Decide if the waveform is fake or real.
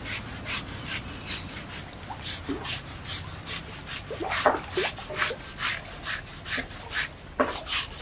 real